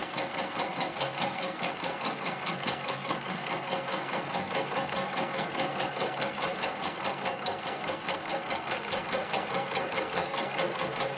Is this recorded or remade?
remade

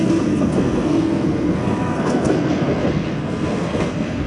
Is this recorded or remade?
remade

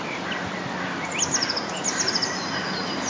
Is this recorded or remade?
recorded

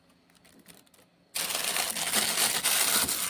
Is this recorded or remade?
recorded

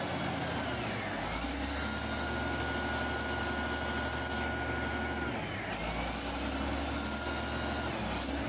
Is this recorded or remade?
recorded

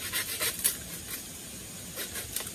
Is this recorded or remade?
recorded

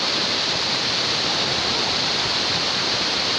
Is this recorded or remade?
recorded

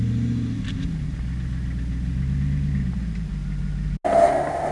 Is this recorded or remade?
recorded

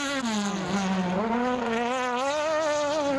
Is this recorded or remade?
recorded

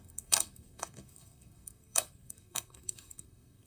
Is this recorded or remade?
remade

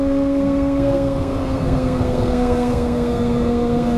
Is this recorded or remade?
remade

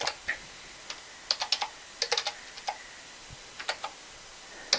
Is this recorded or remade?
recorded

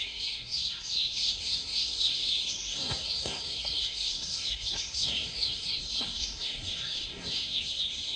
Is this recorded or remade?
remade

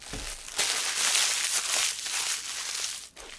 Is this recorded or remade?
recorded